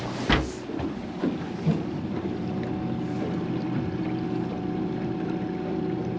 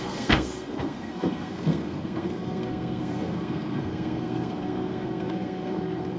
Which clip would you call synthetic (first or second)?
second